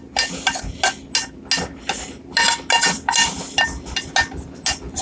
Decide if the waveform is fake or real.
real